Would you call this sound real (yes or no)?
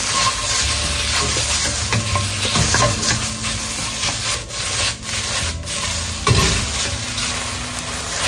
yes